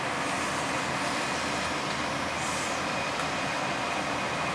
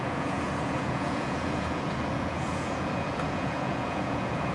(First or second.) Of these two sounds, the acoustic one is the first